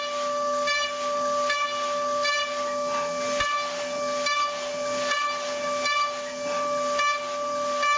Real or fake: real